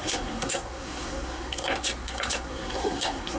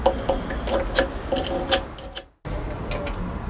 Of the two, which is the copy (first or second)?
first